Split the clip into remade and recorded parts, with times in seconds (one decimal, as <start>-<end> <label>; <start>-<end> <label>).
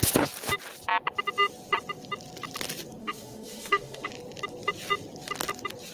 0.0-3.0 recorded; 3.0-4.1 remade; 4.1-5.9 recorded